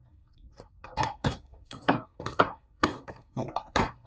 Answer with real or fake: fake